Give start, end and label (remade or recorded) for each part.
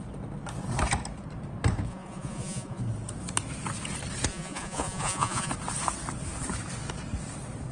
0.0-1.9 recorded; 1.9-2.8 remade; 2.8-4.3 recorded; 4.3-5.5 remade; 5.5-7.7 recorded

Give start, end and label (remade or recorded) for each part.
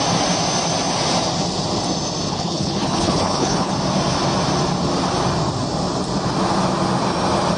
0.0-2.3 recorded; 2.3-3.7 remade; 3.7-7.6 recorded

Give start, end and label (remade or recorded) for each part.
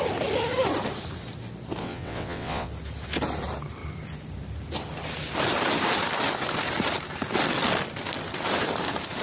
0.0-1.8 recorded; 1.8-2.7 remade; 2.7-9.2 recorded